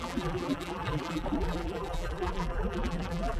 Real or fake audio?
fake